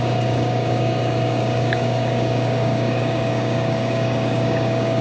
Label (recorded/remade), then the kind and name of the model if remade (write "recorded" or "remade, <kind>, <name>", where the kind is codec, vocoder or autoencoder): remade, codec, DAC